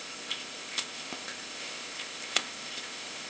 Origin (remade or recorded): remade